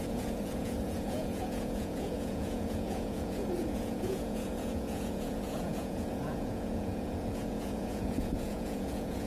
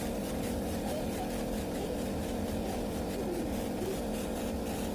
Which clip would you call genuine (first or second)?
second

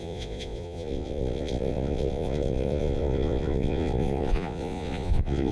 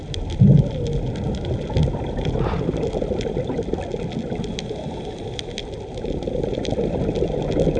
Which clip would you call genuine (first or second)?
second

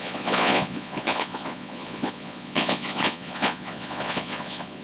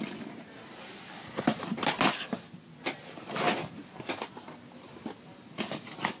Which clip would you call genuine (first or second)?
second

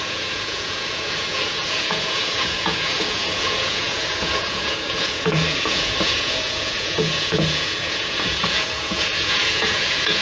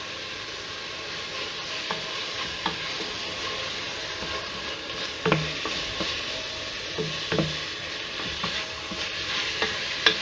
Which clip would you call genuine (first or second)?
second